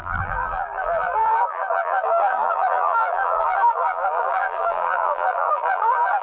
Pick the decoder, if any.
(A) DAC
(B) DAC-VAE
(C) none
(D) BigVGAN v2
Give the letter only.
D